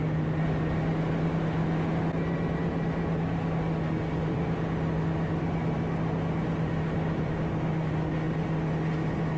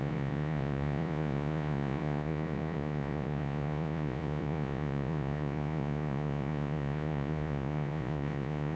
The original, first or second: first